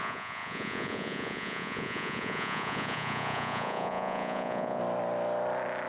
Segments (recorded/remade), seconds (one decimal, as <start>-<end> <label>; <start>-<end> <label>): 0.0-4.8 remade; 4.8-5.9 recorded